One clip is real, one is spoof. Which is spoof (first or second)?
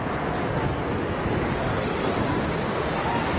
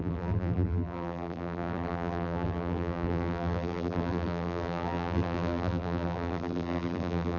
second